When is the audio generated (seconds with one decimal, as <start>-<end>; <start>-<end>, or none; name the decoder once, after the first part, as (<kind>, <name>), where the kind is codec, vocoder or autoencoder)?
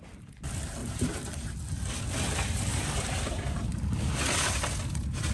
0.8-1.6 (vocoder, BigVGAN v2); 2.7-3.7